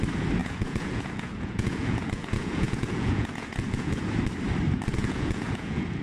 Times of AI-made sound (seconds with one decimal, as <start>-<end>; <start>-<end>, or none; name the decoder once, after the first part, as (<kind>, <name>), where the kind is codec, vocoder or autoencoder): 0.4-4.0 (vocoder, Vocos); 4.9-6.0